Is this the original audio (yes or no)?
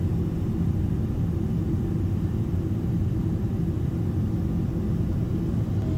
yes